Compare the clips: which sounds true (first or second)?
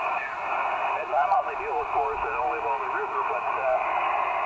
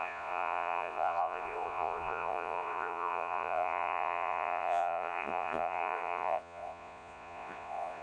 first